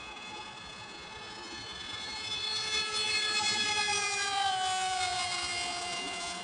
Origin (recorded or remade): remade